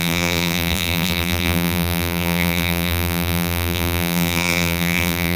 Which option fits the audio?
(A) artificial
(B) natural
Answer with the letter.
A